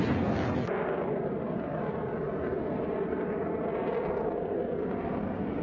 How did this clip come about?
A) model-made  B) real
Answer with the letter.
B